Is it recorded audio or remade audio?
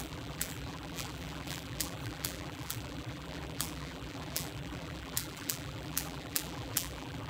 remade